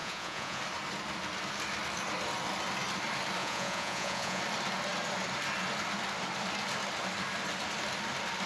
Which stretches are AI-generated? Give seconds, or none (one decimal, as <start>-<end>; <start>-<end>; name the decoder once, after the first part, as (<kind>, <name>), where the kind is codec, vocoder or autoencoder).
0.0-0.6 (vocoder, Vocos); 3.4-4.4

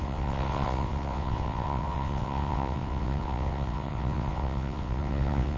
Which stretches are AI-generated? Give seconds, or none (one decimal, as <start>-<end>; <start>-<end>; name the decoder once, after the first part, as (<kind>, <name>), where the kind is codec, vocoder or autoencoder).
0.0-5.6 (vocoder, WaveNeXt)

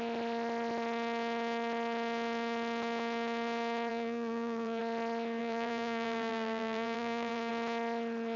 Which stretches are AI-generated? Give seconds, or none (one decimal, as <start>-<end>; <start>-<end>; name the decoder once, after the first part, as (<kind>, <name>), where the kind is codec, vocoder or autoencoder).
3.9-4.8 (vocoder, BigVGAN v2); 5.4-7.5

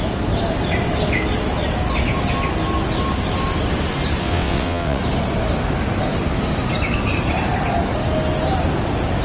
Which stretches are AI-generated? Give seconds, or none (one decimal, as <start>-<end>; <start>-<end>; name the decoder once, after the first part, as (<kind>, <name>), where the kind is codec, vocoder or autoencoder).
4.2-5.0 (vocoder, WaveNeXt)

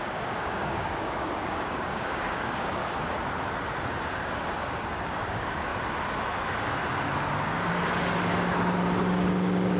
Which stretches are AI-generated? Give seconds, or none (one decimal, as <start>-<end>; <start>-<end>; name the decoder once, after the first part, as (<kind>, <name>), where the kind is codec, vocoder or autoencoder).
0.0-2.8 (codec, DAC); 4.2-5.7; 9.0-9.8

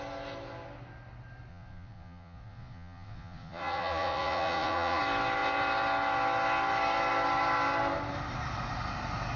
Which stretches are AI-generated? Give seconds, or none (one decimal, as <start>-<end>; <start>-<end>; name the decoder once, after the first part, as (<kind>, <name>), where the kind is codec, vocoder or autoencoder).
1.5-5.0 (vocoder, Vocos)